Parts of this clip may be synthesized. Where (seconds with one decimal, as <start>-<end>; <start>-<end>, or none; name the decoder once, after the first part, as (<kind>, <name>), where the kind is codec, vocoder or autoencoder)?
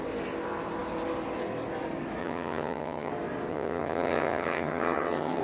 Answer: 2.2-3.1 (vocoder, HiFi-GAN); 3.5-5.4